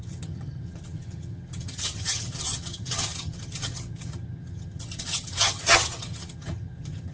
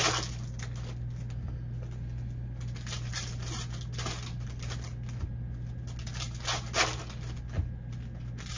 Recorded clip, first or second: second